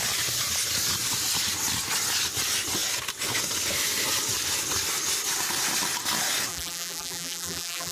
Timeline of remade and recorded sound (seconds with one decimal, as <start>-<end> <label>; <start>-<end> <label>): 0.0-6.5 recorded; 6.5-7.9 remade